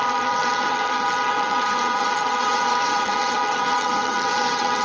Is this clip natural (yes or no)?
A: no